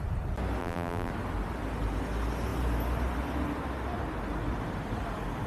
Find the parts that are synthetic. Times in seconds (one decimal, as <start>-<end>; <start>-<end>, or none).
0.6-1.1